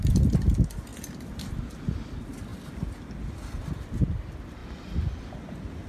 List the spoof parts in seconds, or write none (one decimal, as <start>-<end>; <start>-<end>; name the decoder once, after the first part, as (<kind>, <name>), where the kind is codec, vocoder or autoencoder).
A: none